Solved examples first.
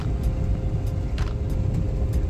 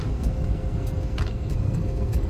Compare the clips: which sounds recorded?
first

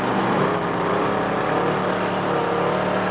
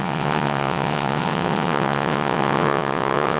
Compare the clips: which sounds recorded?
first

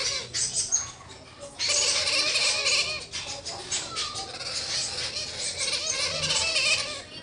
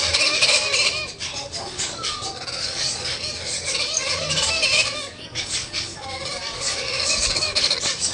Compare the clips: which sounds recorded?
first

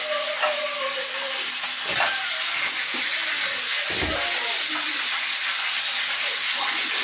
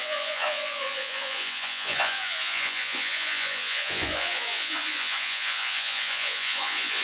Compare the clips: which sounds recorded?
first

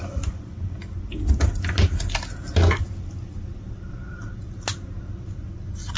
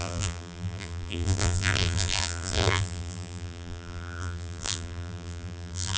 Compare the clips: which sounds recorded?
first